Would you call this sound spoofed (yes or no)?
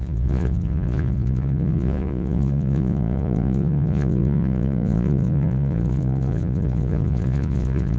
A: yes